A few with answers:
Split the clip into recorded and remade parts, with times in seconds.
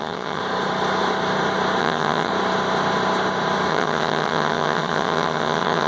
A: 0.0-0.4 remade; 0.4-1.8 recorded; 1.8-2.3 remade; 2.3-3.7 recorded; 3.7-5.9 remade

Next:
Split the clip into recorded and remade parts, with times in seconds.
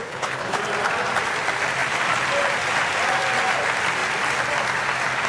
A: 0.0-0.6 remade; 0.6-5.3 recorded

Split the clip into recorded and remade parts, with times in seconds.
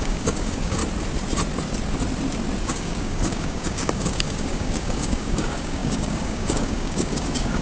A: 0.0-0.8 remade; 0.8-2.6 recorded; 2.6-7.6 remade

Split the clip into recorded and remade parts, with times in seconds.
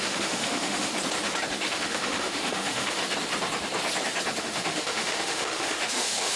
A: 0.0-0.9 remade; 0.9-1.7 recorded; 1.7-3.0 remade; 3.0-4.4 recorded; 4.4-6.4 remade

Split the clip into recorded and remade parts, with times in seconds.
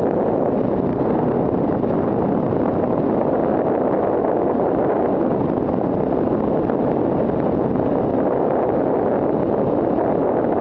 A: 0.0-0.9 recorded; 0.9-1.4 remade; 1.4-10.6 recorded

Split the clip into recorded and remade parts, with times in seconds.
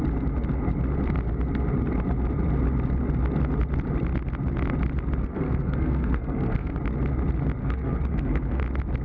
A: 0.0-5.2 recorded; 5.2-6.8 remade; 6.8-7.6 recorded; 7.6-8.6 remade; 8.6-9.0 recorded